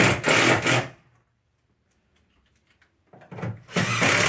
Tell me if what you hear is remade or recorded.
recorded